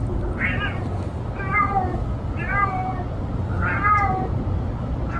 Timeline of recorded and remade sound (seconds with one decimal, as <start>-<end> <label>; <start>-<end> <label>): 0.0-5.2 recorded